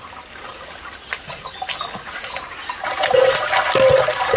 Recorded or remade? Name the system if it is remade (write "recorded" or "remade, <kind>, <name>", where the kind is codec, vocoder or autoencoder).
recorded